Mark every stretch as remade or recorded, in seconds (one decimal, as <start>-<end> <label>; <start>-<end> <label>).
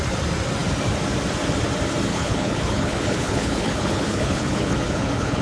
0.0-2.1 recorded; 2.1-5.4 remade